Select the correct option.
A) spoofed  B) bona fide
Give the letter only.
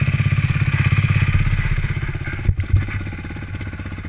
B